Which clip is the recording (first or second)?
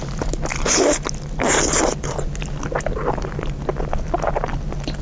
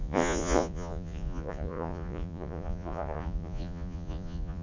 first